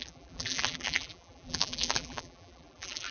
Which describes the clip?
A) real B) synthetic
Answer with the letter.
B